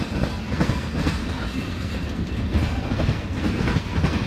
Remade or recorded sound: remade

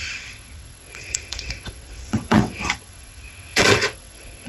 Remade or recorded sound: remade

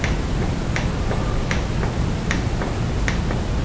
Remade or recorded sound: recorded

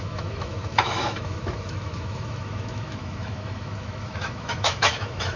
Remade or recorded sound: remade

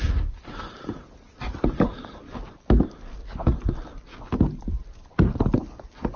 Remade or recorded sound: recorded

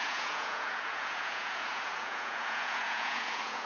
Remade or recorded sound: remade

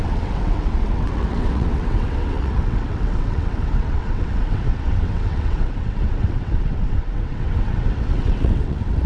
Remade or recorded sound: remade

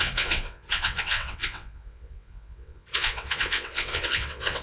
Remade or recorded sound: remade